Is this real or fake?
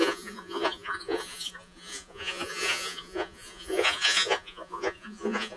fake